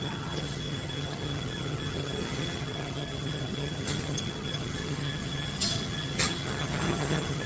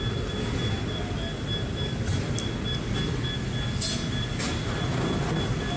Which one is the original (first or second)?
second